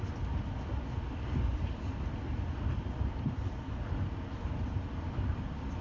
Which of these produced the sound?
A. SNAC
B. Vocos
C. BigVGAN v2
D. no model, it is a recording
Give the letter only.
D